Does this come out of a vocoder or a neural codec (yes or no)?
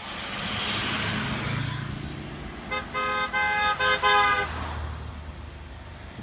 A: no